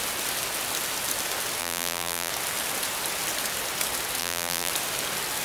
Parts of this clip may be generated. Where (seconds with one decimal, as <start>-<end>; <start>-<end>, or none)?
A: 1.6-2.3; 4.2-4.7